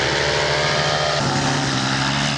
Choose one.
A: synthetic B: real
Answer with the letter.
B